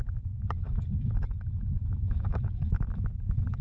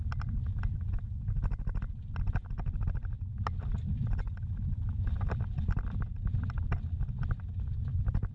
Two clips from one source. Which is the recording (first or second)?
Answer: second